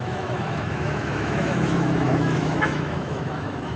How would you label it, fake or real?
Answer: fake